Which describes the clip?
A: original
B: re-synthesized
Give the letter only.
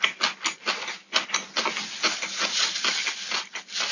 A